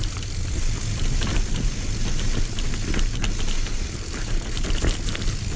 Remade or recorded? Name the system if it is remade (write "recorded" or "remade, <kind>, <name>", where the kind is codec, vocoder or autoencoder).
recorded